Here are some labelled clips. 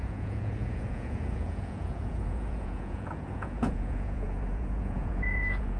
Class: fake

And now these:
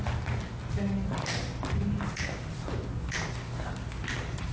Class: real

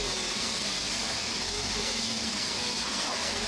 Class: fake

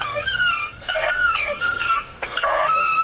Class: fake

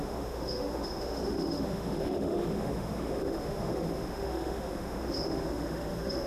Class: fake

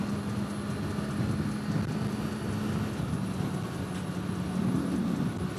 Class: real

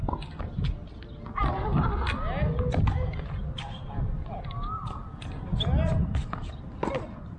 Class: real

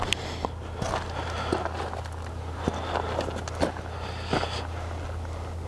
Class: real